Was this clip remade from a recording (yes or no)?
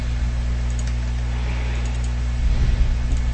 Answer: no